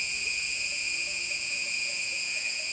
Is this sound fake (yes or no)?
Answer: yes